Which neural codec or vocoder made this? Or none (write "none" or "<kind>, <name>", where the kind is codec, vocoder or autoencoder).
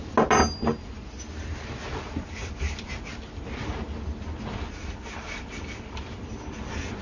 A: none